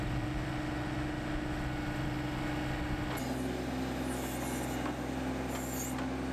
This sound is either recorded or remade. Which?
recorded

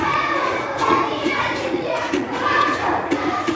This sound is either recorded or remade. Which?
remade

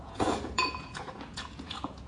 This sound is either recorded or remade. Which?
remade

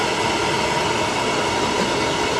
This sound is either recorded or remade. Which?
recorded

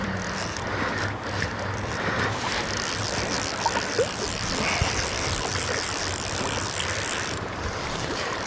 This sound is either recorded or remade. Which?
remade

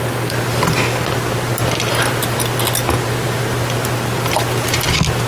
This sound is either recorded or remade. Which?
recorded